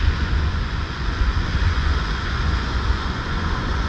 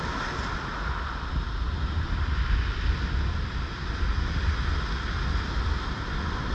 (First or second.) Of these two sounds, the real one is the second